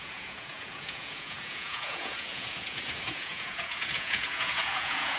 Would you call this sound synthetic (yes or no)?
yes